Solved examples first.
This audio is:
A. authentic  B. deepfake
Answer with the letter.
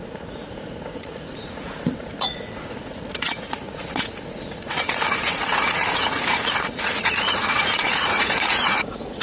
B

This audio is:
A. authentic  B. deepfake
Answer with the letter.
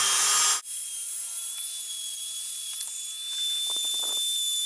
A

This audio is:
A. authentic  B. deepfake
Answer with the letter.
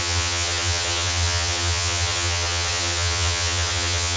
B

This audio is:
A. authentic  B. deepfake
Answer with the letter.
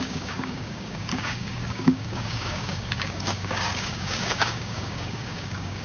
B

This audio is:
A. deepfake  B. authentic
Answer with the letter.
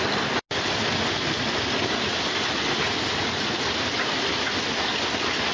B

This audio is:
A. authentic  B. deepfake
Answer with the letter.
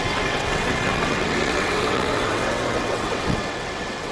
B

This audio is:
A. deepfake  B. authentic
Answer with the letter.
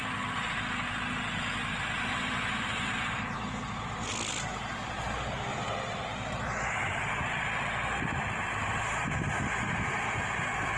B